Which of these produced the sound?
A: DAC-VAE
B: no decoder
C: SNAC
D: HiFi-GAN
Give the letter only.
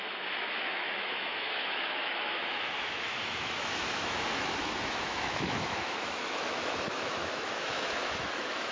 A